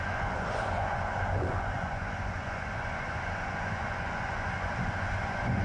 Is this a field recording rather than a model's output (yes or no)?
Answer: no